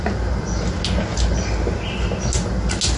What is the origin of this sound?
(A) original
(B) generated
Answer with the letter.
A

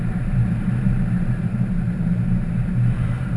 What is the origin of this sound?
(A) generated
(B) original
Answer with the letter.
A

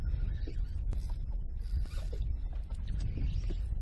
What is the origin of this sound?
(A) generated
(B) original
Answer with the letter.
B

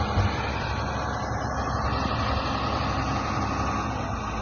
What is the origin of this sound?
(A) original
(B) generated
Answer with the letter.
A